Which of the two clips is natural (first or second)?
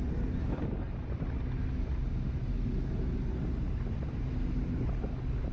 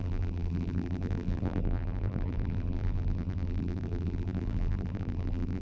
first